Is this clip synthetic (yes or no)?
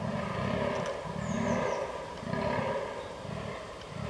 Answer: no